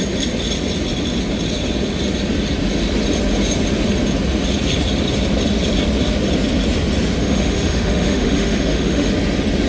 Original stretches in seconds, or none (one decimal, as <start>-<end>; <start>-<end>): 0.0-7.2; 9.1-9.7